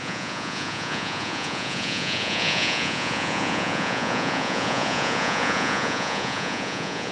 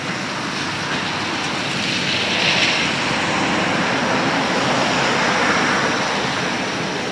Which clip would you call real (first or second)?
second